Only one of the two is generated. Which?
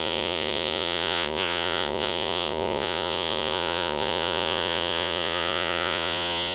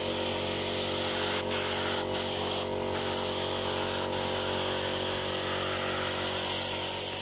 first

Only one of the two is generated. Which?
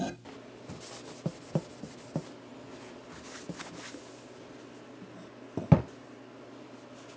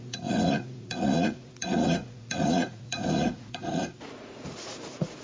second